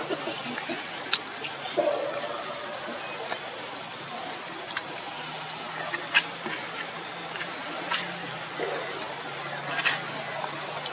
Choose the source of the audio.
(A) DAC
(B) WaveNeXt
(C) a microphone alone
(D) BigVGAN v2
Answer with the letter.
C